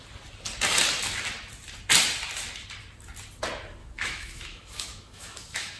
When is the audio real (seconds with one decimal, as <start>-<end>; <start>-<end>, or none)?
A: 0.0-3.8